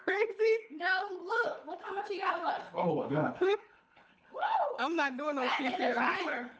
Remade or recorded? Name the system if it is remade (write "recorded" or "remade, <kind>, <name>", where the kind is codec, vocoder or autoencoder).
remade, codec, HILCodec